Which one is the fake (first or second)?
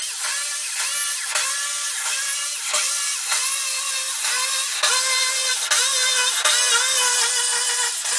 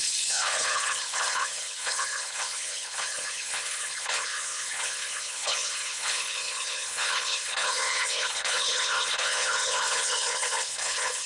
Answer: second